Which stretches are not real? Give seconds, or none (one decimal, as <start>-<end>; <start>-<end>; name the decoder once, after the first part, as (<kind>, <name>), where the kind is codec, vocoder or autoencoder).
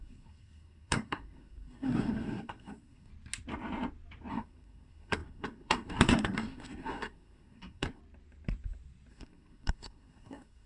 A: 0.0-3.1 (codec, SNAC); 4.3-8.0; 9.1-10.7